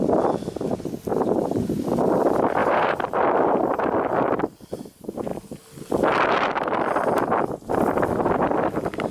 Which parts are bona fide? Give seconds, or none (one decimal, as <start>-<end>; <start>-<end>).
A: 0.0-1.1; 1.7-2.6; 3.8-9.1